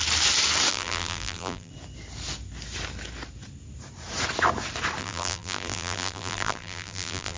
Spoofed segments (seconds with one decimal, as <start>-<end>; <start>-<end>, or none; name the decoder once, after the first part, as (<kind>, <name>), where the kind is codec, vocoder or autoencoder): 0.7-1.7 (vocoder, BigVGAN v2); 5.0-7.4